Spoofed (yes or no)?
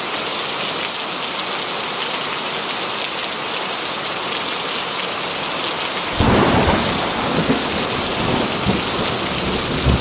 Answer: no